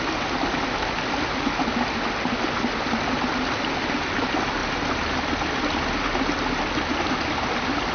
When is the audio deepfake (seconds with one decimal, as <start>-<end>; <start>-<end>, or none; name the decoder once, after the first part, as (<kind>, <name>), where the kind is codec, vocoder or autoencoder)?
none